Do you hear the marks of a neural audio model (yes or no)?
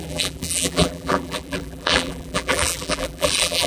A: yes